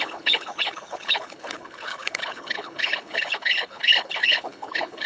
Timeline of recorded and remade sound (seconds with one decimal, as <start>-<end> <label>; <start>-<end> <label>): 0.0-5.1 remade